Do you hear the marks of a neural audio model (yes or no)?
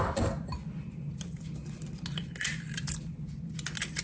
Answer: no